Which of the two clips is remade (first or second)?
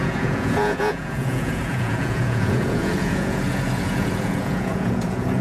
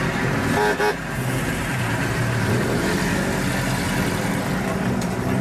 first